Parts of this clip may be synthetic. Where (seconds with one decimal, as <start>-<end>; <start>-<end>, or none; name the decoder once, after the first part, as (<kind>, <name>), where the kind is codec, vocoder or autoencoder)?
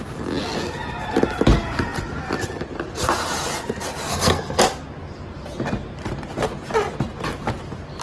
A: 4.1-4.6 (codec, SNAC)